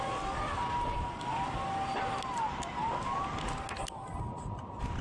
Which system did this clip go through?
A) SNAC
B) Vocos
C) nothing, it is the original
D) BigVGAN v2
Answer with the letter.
C